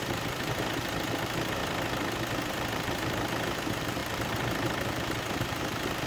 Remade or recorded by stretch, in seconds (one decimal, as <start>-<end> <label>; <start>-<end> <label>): 0.0-1.6 remade; 1.6-2.5 recorded; 2.5-6.1 remade